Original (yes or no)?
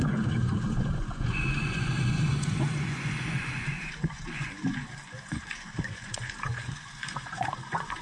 no